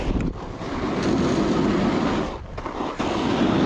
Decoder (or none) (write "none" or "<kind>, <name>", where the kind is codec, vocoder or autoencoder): none